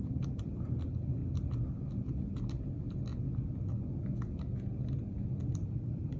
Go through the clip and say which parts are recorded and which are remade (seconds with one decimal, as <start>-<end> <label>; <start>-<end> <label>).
0.0-1.2 remade; 1.2-2.2 recorded; 2.2-3.1 remade; 3.1-5.8 recorded; 5.8-6.2 remade